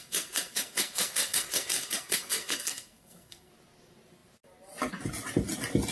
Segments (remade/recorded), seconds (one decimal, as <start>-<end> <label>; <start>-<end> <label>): 0.0-3.5 remade; 3.5-5.9 recorded